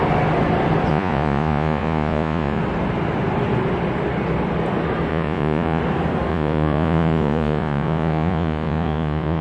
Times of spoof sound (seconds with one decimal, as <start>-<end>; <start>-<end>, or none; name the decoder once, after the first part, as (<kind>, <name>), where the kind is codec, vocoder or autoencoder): 0.9-2.6 (vocoder, Vocos); 5.1-5.8; 6.3-9.4